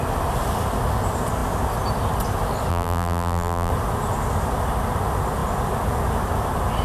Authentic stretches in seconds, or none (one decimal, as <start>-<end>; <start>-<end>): 0.0-2.7; 3.7-6.8